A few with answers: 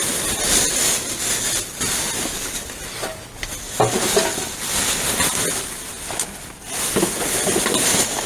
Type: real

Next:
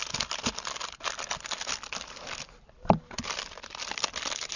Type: real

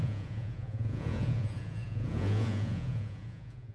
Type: fake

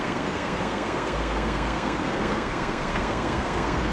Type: fake